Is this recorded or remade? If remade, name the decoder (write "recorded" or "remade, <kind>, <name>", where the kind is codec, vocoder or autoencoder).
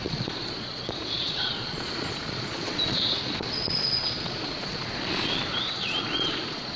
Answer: remade, vocoder, Vocos